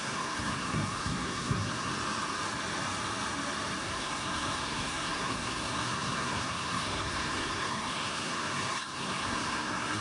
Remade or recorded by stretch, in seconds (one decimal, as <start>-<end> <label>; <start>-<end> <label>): 0.0-1.9 remade; 1.9-3.8 recorded; 3.8-10.0 remade